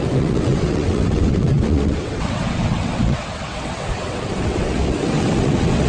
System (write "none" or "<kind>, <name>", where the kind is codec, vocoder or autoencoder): vocoder, WaveNeXt